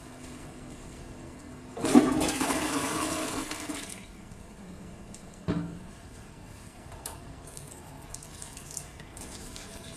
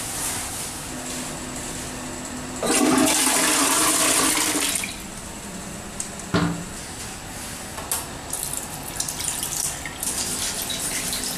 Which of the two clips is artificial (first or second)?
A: first